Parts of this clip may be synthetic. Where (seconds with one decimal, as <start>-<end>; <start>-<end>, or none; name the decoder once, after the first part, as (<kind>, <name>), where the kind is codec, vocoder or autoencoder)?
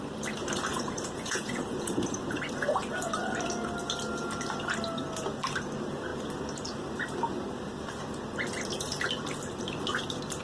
0.7-2.4 (vocoder, Vocos)